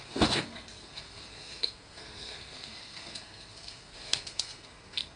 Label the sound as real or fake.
fake